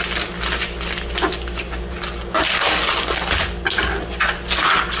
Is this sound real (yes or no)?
yes